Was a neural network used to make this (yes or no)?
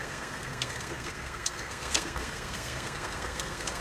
yes